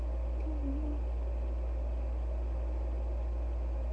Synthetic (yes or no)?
no